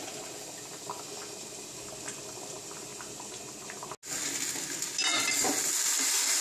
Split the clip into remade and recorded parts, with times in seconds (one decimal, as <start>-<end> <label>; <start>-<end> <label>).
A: 0.0-6.4 recorded